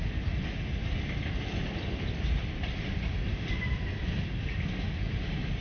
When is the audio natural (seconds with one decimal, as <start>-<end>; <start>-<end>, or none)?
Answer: 0.0-0.8; 4.2-5.6

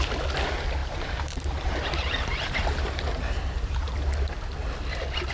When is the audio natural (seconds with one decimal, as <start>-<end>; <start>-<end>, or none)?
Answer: 0.0-0.8; 4.0-5.3

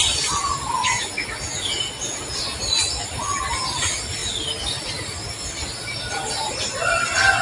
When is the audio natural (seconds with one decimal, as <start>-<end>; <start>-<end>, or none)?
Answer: 0.0-4.2; 6.1-7.4

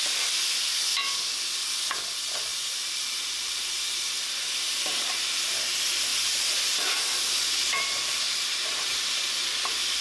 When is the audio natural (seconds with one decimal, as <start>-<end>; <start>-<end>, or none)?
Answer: 0.0-2.5; 4.2-6.1; 7.0-7.6